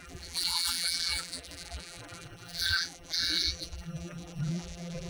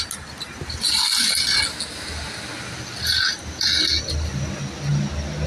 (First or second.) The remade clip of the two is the first